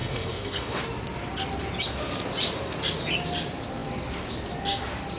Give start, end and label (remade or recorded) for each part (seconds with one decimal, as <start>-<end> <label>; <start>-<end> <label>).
0.0-0.8 remade; 0.8-5.2 recorded